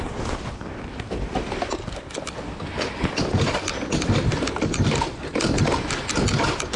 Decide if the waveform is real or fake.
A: real